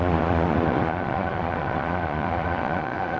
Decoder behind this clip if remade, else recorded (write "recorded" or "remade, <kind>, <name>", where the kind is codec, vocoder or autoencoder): remade, vocoder, Vocos